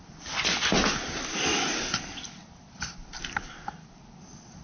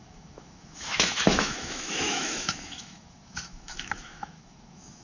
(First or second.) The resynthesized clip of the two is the second